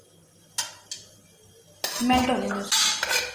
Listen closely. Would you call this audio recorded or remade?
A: recorded